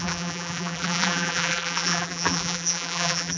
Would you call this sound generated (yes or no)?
yes